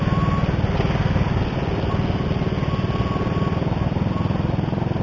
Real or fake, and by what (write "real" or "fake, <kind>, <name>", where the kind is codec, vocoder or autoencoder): real